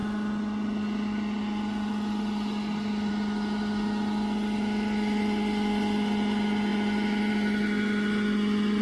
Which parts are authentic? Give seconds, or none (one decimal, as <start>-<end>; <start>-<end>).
0.0-8.8